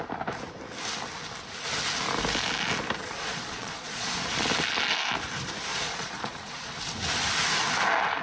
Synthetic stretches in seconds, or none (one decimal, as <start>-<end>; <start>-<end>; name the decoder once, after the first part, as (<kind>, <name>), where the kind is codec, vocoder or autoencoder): 3.0-4.5 (vocoder, Vocos); 5.7-6.7